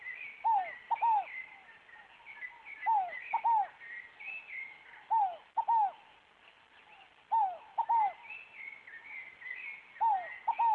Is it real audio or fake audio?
real